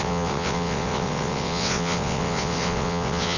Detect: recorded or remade remade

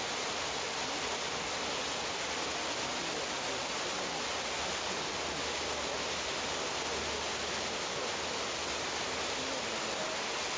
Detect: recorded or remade recorded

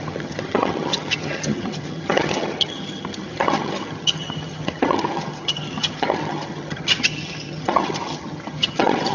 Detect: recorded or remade remade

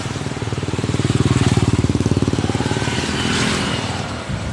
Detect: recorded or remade remade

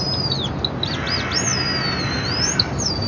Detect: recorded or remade recorded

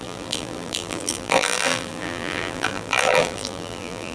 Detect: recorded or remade remade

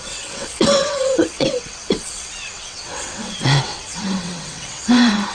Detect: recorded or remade remade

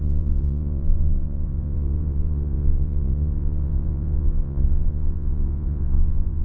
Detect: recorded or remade remade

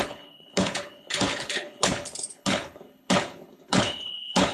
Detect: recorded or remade remade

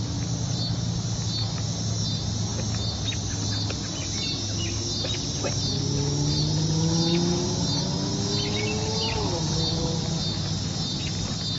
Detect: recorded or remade recorded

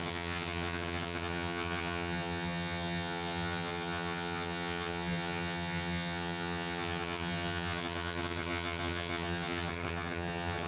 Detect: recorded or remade remade